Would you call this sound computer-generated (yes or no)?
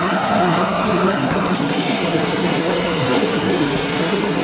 yes